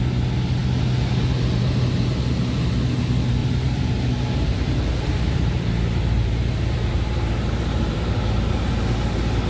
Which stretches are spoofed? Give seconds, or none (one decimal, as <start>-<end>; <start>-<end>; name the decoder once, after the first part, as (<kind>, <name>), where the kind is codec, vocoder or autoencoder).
3.4-8.2 (vocoder, BigVGAN v2)